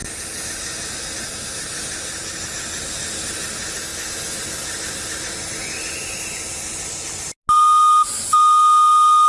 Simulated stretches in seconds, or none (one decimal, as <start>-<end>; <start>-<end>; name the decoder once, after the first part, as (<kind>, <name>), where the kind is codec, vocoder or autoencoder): none